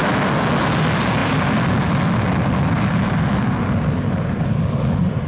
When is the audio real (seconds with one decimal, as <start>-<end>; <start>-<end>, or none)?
0.0-5.3